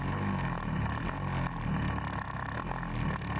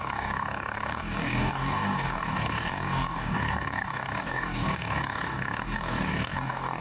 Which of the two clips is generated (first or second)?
second